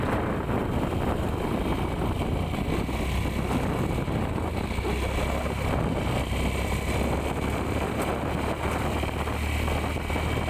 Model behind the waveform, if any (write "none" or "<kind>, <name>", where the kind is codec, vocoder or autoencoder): none